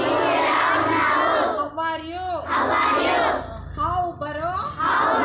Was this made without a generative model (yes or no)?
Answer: yes